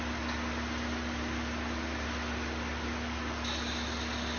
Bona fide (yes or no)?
yes